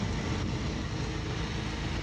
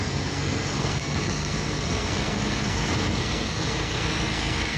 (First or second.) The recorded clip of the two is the first